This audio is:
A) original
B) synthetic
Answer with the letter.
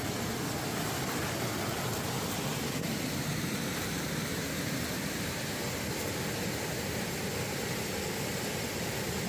A